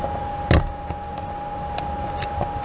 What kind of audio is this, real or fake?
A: real